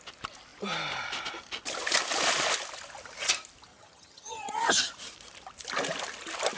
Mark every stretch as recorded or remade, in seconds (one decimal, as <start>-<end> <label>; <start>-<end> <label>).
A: 0.0-3.7 recorded; 3.7-4.9 remade; 4.9-6.6 recorded